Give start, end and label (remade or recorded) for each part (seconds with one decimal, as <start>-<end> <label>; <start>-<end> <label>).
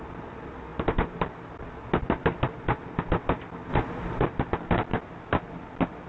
0.0-0.7 recorded; 0.7-1.6 remade; 1.6-3.7 recorded; 3.7-4.2 remade; 4.2-6.1 recorded